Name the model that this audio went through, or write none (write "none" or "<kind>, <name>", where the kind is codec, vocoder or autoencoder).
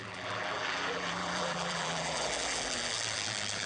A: vocoder, BigVGAN v2